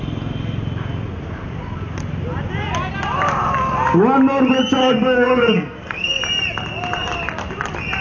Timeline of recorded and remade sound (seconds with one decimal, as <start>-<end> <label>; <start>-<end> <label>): 0.0-4.8 recorded; 4.8-6.2 remade; 6.2-8.0 recorded